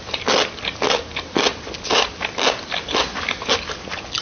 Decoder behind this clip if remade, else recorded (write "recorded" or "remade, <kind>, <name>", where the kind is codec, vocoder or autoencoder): recorded